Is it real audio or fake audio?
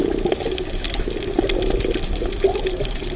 real